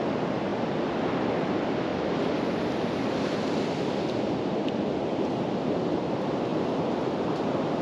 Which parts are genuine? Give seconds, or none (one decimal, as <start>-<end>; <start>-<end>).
0.0-1.9; 5.5-6.5; 7.2-7.8